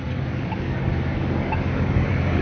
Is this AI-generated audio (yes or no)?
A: yes